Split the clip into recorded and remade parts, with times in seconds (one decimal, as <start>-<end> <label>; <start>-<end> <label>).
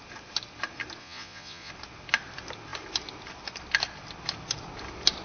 0.0-1.0 recorded; 1.0-1.7 remade; 1.7-5.2 recorded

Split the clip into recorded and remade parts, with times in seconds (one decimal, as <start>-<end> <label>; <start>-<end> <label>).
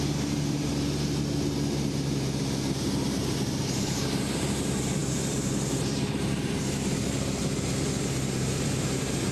0.0-0.7 remade; 0.7-3.6 recorded; 3.6-7.4 remade; 7.4-8.0 recorded; 8.0-9.3 remade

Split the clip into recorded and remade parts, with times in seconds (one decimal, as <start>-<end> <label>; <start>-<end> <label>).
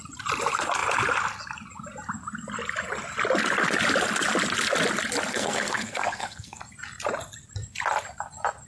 0.0-5.3 recorded; 5.3-6.6 remade; 6.6-8.7 recorded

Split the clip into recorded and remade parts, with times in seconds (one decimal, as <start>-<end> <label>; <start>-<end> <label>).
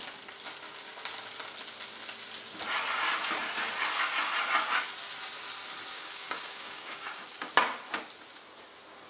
0.0-5.9 recorded; 5.9-7.5 remade; 7.5-9.1 recorded